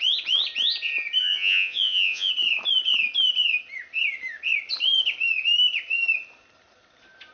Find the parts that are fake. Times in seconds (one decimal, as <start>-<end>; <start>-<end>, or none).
1.2-2.3